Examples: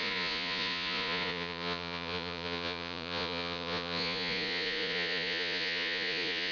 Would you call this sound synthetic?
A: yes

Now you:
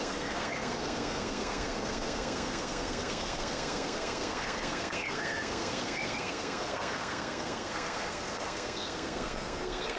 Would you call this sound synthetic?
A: yes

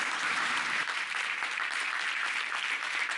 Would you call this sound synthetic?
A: yes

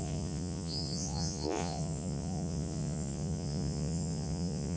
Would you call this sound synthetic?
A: yes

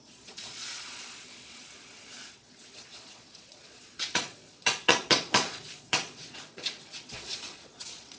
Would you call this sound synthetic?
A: yes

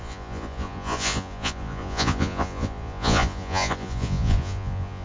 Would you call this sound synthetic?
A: yes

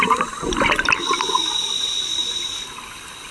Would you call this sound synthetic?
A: no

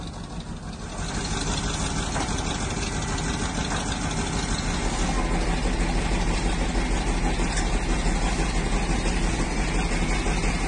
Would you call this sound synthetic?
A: no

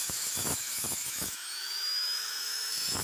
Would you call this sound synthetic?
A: yes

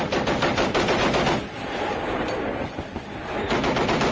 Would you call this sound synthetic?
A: yes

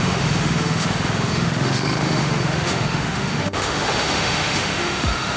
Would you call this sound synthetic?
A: yes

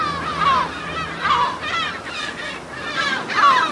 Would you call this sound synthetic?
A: no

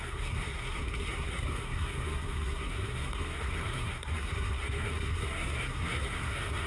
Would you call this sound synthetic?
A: yes